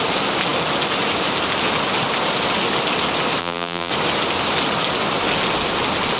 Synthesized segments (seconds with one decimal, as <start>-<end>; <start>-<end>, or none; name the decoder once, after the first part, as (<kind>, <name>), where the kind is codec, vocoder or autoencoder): 3.4-3.9 (vocoder, BigVGAN v2)